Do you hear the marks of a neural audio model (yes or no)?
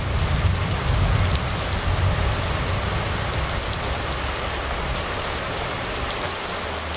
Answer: no